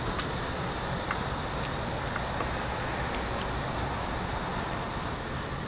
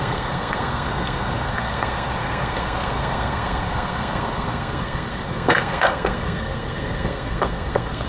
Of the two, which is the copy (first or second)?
second